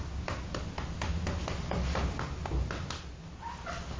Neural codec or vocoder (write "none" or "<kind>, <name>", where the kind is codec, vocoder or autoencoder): none